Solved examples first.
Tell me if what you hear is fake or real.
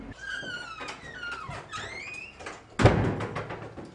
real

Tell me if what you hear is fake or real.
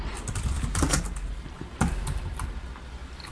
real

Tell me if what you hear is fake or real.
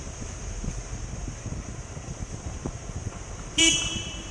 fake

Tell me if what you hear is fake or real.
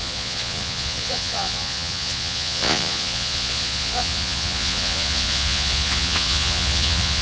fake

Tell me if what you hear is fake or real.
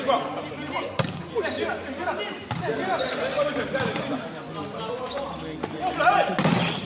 real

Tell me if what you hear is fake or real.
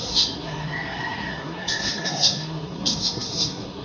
fake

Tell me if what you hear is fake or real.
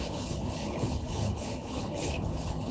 fake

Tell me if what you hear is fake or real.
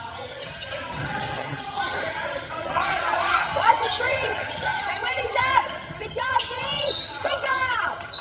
fake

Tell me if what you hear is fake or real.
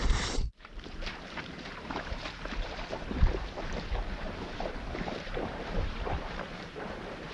fake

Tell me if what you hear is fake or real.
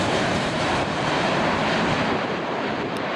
fake